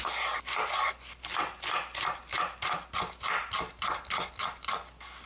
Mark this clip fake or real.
real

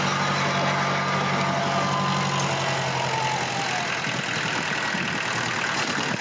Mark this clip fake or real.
real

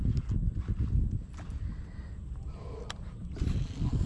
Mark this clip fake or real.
real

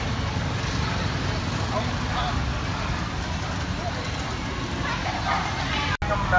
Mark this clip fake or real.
real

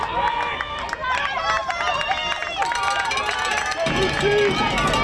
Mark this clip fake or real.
real